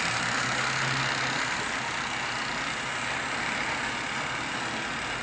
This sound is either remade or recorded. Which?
recorded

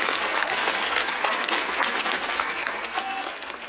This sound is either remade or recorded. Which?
remade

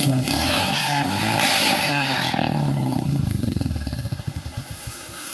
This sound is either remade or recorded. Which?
remade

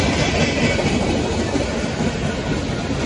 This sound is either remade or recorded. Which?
recorded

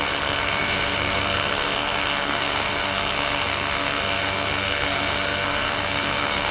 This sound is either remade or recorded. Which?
remade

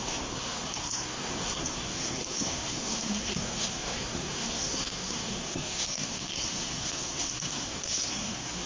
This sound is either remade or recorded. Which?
remade